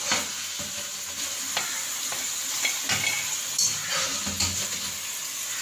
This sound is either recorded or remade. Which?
recorded